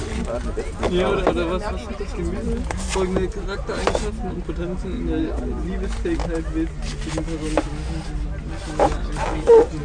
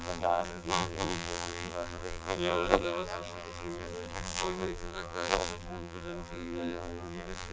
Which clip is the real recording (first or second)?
first